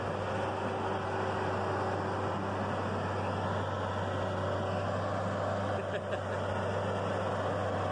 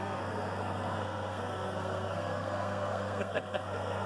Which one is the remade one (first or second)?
second